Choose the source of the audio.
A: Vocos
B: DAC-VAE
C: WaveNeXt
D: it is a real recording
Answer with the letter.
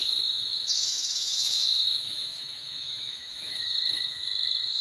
B